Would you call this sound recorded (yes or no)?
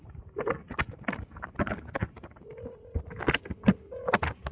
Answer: yes